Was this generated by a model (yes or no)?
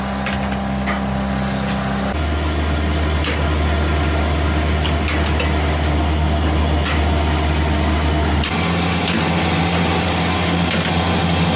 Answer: no